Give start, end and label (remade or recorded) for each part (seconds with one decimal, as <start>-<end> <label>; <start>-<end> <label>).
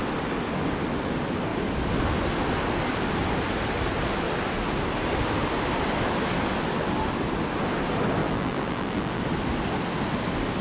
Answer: 0.0-8.2 recorded; 8.2-9.2 remade; 9.2-10.6 recorded